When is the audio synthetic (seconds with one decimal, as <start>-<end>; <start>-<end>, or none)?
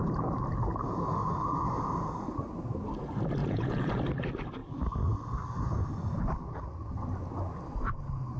3.4-4.0